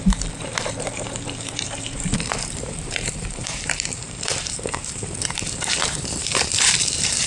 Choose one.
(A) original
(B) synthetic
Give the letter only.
B